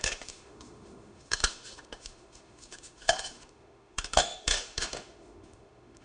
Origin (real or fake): fake